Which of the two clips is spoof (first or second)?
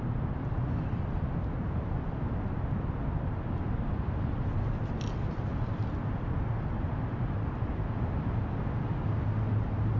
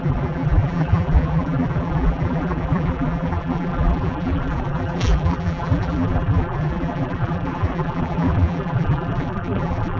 second